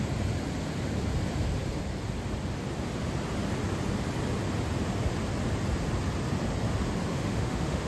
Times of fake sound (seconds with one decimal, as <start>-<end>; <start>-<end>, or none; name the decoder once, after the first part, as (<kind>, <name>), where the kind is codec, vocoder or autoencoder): 7.1-7.9 (autoencoder, DAC-VAE)